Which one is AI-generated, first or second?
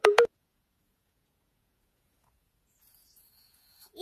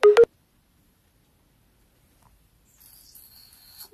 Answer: first